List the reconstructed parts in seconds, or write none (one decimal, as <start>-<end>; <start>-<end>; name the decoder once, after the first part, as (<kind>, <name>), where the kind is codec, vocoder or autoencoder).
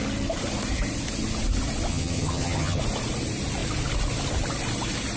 1.9-2.8 (vocoder, HiFi-GAN)